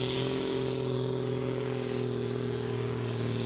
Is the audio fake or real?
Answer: fake